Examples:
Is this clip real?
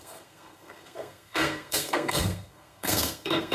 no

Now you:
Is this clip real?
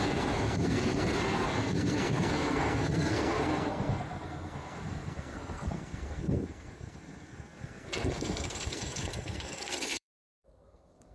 no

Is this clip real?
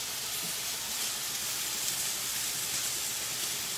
yes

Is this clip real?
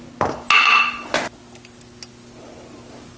yes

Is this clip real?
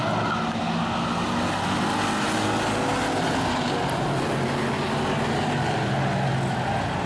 yes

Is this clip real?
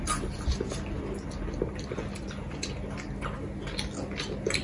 yes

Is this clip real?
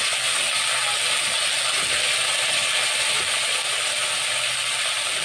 yes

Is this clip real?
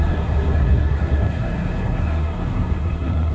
no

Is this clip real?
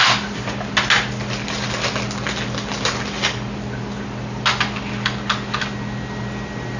yes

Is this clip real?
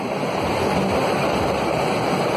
yes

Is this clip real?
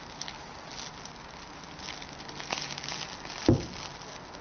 yes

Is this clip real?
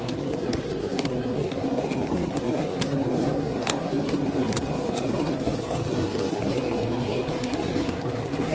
no